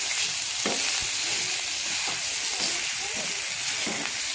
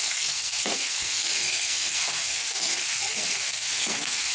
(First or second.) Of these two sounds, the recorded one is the first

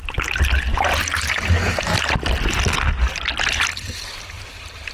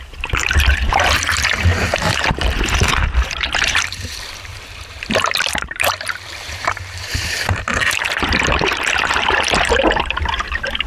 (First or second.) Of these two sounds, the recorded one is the first